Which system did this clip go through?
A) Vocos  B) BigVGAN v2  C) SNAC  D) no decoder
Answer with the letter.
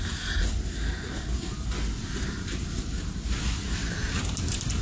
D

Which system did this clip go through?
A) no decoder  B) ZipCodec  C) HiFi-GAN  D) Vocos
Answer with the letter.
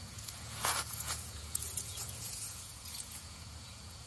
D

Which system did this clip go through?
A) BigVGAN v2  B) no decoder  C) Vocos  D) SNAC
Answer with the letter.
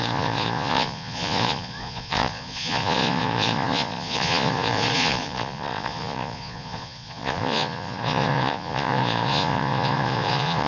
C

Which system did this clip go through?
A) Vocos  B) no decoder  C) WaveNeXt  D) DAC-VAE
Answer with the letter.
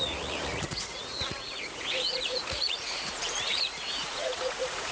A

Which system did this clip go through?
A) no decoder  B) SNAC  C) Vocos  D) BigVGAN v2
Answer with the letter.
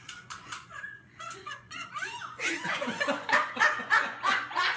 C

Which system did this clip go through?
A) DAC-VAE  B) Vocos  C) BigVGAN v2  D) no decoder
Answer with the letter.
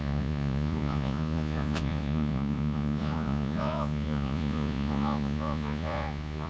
B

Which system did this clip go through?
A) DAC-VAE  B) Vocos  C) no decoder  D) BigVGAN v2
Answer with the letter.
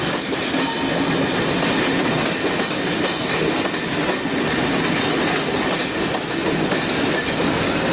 C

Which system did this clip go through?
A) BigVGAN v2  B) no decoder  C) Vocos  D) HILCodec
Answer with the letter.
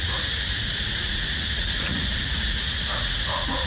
C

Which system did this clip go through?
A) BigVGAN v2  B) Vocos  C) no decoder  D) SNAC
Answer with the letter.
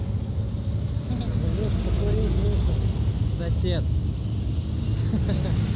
C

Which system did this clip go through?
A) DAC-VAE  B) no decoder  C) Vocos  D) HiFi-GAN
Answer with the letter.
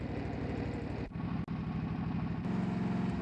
B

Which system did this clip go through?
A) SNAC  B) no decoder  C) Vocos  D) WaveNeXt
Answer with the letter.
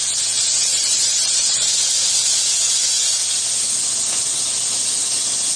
C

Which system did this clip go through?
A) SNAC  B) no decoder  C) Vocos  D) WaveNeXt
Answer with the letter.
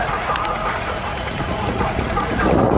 C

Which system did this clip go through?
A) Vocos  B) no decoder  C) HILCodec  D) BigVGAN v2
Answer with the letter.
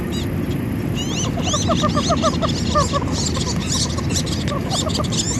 B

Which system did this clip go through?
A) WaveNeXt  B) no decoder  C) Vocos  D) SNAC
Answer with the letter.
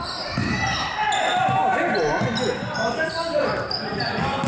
B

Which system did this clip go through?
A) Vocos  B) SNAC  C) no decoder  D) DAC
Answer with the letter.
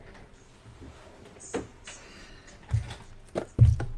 C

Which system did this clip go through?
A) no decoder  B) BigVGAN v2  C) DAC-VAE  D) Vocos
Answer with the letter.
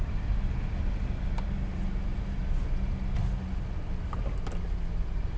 A